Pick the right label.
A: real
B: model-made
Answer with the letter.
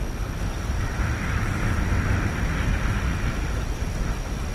A